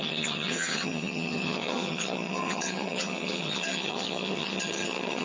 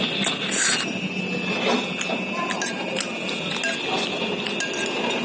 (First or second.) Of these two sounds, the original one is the second